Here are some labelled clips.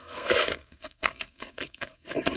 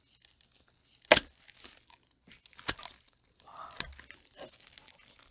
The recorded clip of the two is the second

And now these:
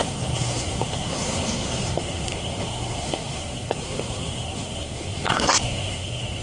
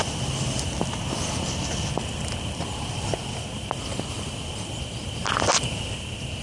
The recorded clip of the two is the second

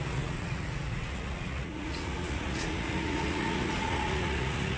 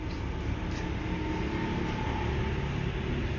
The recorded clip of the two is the second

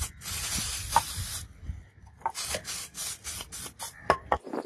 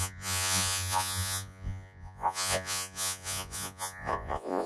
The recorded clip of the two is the first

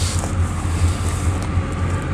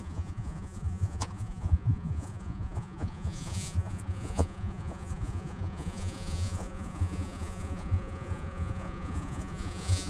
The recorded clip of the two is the first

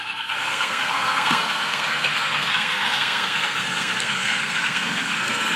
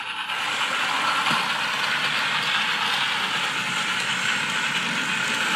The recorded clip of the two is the second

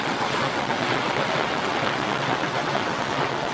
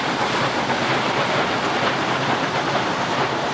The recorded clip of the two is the second